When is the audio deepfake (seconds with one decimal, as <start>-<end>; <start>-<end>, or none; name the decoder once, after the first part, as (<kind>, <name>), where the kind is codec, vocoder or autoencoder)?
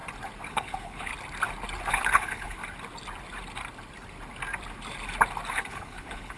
0.5-1.1 (codec, HILCodec); 1.9-2.6; 5.5-6.4